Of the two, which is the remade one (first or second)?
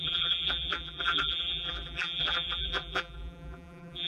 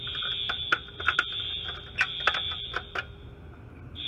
first